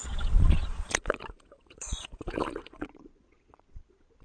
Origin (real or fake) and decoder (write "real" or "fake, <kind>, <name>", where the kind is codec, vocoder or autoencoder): fake, vocoder, Vocos